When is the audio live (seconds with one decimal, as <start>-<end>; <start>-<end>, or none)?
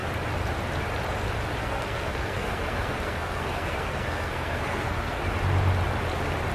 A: 0.0-1.6; 5.2-6.5